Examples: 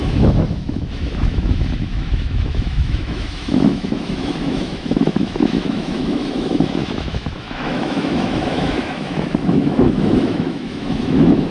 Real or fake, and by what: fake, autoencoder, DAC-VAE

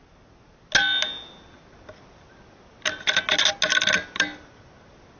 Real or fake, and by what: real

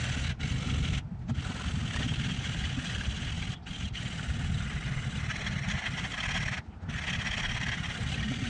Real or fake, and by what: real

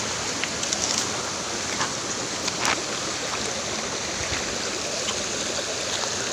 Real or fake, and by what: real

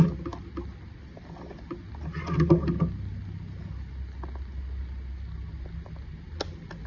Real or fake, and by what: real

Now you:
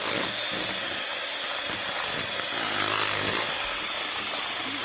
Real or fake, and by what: real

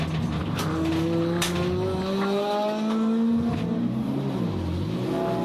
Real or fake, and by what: real